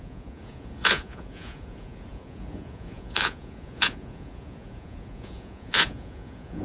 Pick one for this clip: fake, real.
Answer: fake